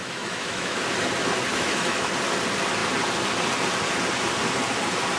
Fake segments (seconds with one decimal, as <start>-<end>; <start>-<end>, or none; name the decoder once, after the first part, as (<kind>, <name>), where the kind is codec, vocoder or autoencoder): 0.0-0.8 (autoencoder, DAC-VAE); 1.5-2.1